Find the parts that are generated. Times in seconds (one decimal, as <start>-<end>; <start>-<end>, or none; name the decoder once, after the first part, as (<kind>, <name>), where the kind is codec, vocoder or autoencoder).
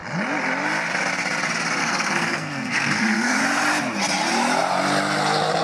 1.8-3.4 (codec, SNAC)